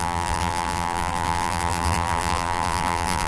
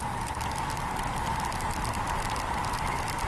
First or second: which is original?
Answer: second